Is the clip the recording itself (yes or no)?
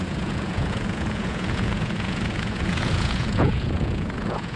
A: no